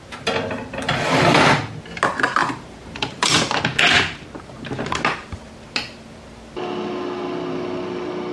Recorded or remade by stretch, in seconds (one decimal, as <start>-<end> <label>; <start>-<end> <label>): 0.0-2.4 recorded; 2.4-3.6 remade; 3.6-8.3 recorded